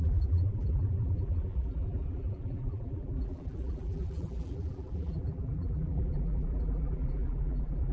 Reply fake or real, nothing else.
fake